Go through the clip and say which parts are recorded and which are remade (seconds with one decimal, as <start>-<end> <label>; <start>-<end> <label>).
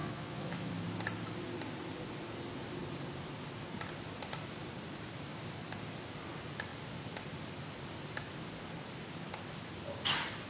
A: 0.0-0.7 remade; 0.7-10.5 recorded